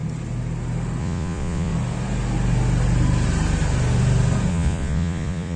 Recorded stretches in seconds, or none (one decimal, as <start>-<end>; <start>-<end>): 0.0-1.0; 1.7-4.5